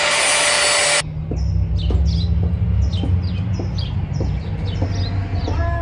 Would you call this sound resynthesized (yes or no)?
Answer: no